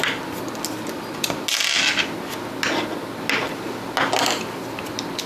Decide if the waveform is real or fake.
real